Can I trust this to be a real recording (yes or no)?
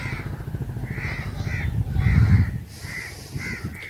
yes